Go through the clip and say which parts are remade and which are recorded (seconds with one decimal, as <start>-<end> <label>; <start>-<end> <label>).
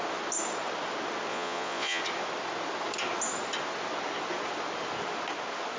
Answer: 0.0-1.3 recorded; 1.3-2.0 remade; 2.0-5.8 recorded